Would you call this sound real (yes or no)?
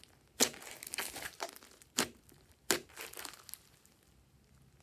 yes